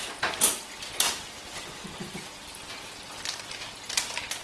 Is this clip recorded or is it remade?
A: recorded